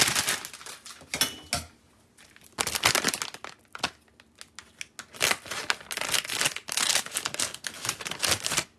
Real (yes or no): yes